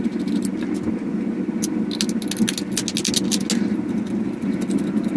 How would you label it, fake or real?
real